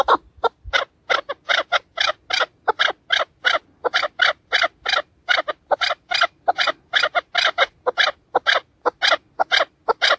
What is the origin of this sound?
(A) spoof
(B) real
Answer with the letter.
B